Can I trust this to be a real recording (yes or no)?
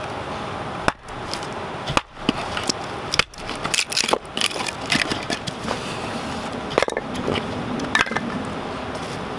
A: yes